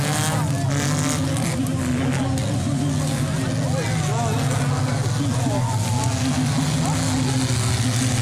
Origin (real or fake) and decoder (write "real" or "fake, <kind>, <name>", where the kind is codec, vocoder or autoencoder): real